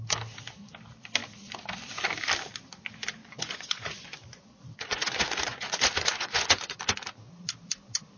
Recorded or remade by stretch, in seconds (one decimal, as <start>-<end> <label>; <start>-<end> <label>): 0.0-3.2 recorded; 3.2-6.7 remade; 6.7-8.2 recorded